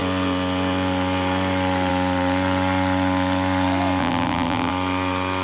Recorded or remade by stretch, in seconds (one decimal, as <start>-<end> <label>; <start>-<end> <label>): 0.0-4.0 recorded; 4.0-4.7 remade; 4.7-5.4 recorded